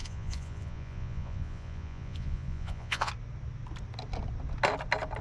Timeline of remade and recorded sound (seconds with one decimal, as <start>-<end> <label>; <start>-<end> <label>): 0.0-3.1 remade; 3.1-5.2 recorded